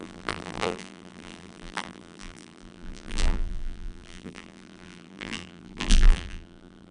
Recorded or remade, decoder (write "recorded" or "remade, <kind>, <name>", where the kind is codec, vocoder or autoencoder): remade, vocoder, BigVGAN v2